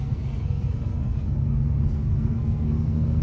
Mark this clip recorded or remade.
remade